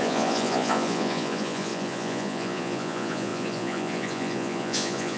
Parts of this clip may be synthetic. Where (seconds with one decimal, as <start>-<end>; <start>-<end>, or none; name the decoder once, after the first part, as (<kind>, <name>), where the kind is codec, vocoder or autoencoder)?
0.0-5.2 (vocoder, Vocos)